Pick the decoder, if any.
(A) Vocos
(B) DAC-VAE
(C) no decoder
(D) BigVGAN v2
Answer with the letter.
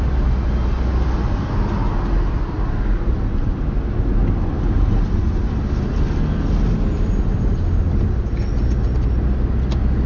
C